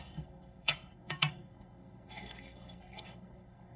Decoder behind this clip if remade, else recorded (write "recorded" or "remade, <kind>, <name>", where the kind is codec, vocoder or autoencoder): remade, codec, SNAC